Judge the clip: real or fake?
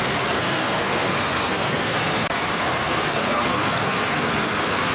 fake